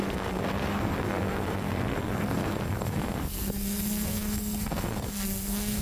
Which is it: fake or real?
fake